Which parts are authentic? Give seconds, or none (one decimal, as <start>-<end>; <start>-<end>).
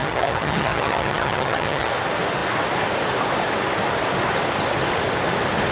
1.9-5.7